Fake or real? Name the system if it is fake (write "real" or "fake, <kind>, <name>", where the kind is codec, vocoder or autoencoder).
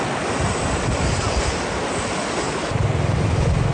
real